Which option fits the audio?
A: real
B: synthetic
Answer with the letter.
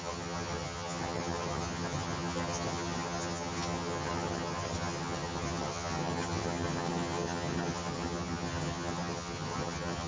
B